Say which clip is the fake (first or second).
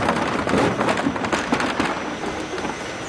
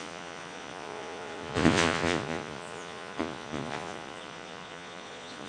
second